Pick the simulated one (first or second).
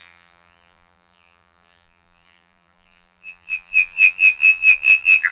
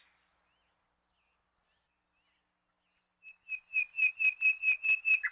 first